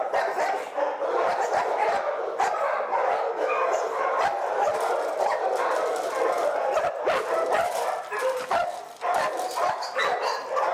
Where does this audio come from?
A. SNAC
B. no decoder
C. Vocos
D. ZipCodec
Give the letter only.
B